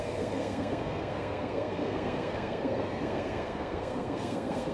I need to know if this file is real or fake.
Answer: fake